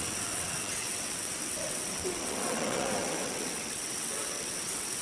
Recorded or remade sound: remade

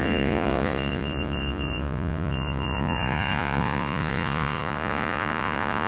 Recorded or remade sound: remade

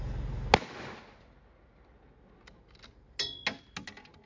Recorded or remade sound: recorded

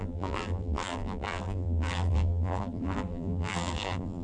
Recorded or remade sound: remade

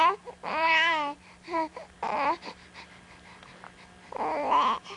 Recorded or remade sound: remade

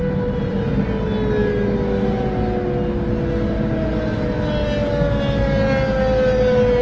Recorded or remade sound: recorded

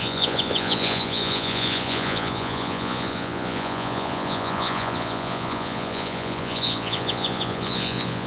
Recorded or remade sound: remade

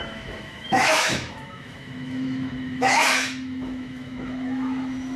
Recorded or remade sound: remade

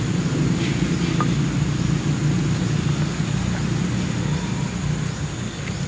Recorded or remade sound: recorded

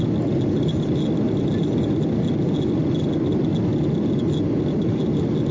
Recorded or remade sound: recorded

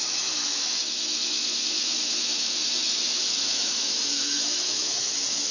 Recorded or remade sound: remade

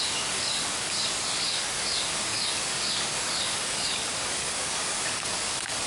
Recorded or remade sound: remade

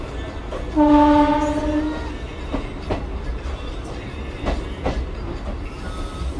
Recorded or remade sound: recorded